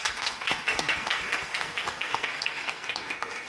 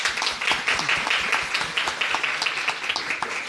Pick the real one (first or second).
second